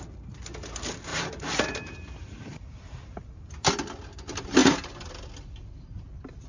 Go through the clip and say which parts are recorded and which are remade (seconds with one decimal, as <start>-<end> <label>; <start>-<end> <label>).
0.0-1.1 recorded; 1.1-3.5 remade; 3.5-4.6 recorded; 4.6-5.1 remade; 5.1-6.5 recorded